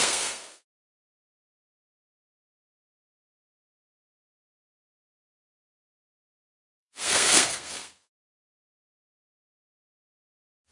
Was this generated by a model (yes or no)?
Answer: yes